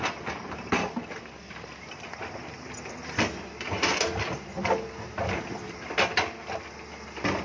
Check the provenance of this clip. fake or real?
real